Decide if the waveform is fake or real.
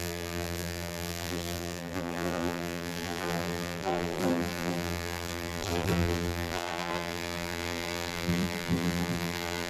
fake